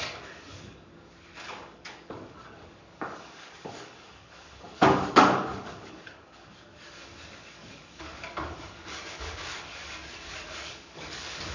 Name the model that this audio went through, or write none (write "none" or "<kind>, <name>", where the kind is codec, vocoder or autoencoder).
codec, DAC